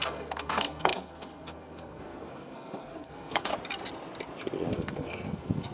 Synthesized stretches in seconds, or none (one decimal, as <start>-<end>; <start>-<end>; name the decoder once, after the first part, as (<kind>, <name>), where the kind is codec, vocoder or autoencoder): 0.0-3.5 (codec, SNAC); 4.7-5.7

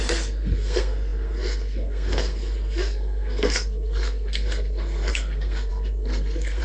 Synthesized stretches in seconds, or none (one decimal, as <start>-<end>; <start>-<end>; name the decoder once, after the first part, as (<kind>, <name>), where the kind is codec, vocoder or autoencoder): 0.0-6.6 (codec, SNAC)